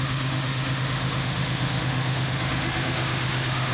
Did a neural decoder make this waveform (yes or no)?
yes